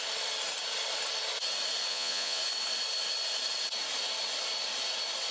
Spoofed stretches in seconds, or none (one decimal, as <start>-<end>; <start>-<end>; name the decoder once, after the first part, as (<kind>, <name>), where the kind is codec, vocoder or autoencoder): 1.9-2.4 (vocoder, Vocos)